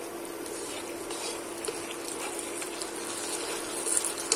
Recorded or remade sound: recorded